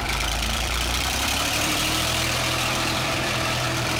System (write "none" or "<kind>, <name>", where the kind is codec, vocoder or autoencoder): vocoder, BigVGAN v2